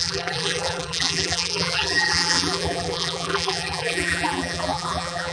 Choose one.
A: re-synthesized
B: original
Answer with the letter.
A